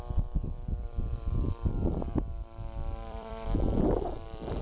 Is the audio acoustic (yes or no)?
no